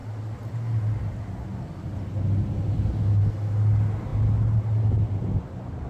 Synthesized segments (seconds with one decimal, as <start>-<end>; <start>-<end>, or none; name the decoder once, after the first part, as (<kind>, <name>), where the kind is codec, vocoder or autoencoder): none